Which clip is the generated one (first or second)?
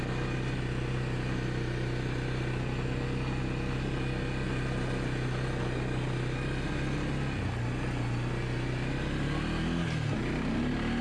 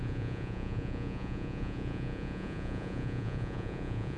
second